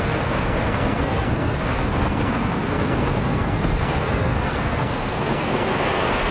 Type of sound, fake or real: fake